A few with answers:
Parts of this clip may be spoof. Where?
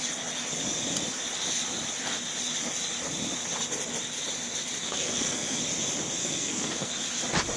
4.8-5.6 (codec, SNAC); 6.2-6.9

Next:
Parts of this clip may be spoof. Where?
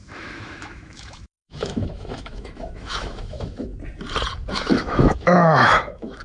0.0-3.7 (autoencoder, DAC-VAE); 4.5-6.2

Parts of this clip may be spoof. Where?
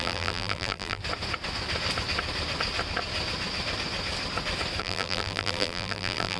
0.0-1.0 (vocoder, BigVGAN v2); 4.8-6.4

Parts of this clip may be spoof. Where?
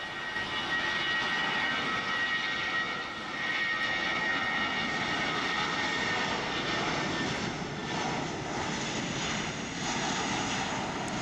1.4-6.4 (vocoder, BigVGAN v2)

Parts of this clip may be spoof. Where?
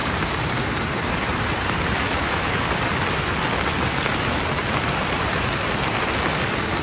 0.0-2.9 (vocoder, BigVGAN v2); 4.6-5.7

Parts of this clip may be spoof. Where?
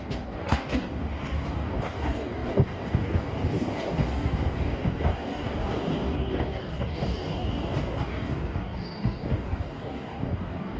0.0-10.8 (codec, DAC)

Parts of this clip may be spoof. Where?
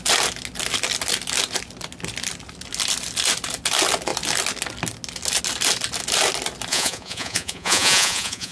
6.7-8.5 (vocoder, Vocos)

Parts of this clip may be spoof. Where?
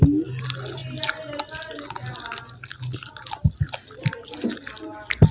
none